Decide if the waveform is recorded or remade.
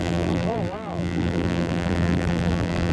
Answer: remade